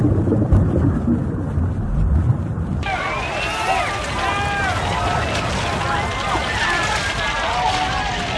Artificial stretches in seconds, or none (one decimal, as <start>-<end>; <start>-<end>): 1.2-2.1; 6.4-7.1